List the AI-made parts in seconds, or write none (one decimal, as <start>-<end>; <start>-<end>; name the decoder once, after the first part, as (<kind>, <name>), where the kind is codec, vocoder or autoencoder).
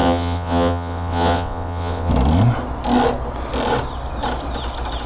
0.0-2.1 (vocoder, WaveNeXt)